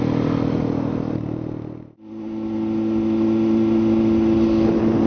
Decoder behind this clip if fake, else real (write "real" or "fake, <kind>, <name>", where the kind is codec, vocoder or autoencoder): real